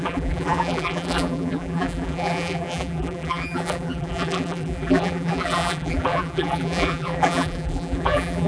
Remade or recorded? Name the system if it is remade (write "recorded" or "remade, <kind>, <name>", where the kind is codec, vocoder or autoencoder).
remade, vocoder, BigVGAN v2